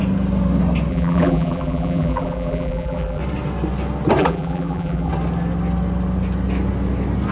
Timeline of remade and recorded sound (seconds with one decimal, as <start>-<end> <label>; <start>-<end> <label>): 0.0-0.9 recorded; 0.9-3.2 remade; 3.2-4.2 recorded; 4.2-5.1 remade; 5.1-7.3 recorded